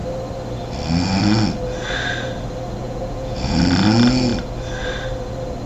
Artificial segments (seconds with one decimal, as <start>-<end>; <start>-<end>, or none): 2.8-3.6